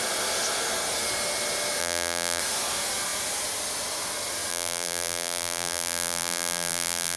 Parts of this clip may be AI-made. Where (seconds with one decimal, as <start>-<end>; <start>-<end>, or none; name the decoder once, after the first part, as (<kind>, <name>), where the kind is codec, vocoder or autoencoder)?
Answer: 1.8-2.4 (vocoder, BigVGAN v2); 4.5-7.2